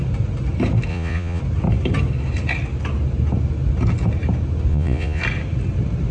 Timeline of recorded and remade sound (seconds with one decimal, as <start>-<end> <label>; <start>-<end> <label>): 0.0-0.9 recorded; 0.9-1.4 remade; 1.4-4.7 recorded; 4.7-5.2 remade; 5.2-6.1 recorded